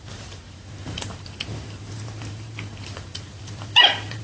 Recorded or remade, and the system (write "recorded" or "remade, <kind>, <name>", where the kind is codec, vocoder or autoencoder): remade, vocoder, BigVGAN v2